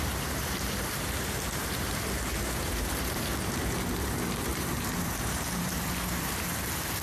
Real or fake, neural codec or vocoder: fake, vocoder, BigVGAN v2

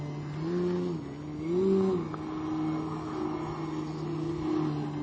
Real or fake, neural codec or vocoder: real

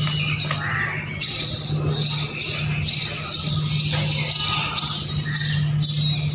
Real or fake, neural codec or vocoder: real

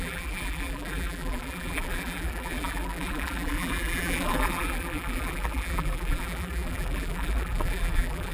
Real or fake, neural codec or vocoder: fake, vocoder, BigVGAN v2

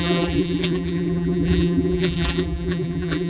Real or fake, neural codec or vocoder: fake, vocoder, BigVGAN v2